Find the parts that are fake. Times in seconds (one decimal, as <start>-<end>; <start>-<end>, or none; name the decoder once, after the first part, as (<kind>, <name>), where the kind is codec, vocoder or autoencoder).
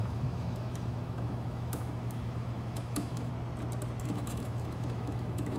0.0-3.3 (autoencoder, DAC-VAE); 4.0-5.6